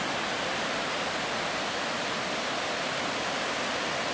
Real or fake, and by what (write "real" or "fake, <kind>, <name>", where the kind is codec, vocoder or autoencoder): real